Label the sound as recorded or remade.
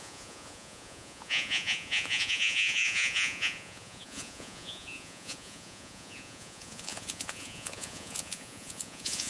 remade